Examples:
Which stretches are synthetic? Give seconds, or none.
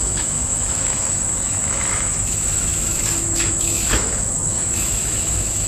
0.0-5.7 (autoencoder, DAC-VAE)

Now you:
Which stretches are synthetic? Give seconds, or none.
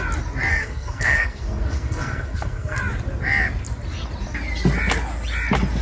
0.5-2.8 (codec, SNAC)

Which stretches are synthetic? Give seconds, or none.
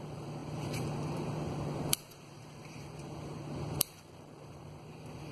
0.0-5.3 (vocoder, BigVGAN v2)